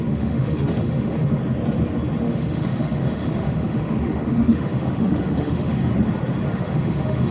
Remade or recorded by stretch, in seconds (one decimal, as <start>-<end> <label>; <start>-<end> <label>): 0.0-1.4 remade; 1.4-2.2 recorded; 2.2-5.9 remade; 5.9-6.5 recorded; 6.5-7.3 remade